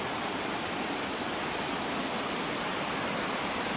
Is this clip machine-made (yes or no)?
no